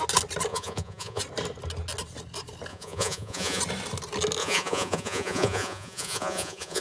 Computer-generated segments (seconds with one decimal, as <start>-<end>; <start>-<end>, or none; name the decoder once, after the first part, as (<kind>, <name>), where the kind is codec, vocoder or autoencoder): 0.5-1.2 (vocoder, Vocos); 2.7-3.6; 4.4-6.8